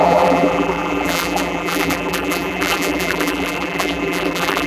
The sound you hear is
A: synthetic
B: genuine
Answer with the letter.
A